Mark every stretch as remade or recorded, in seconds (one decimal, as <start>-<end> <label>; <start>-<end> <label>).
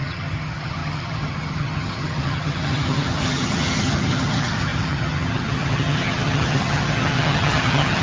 0.0-8.0 remade